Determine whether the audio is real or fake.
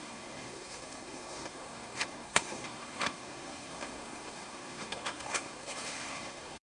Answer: fake